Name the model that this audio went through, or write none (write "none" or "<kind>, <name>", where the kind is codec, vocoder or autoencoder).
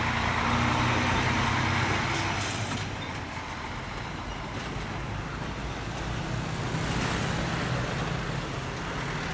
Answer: none